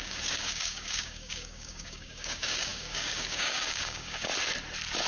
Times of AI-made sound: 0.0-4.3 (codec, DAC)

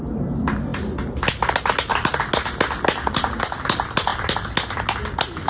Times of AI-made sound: none

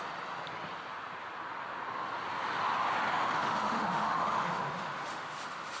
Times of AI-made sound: 3.1-5.8 (autoencoder, DAC-VAE)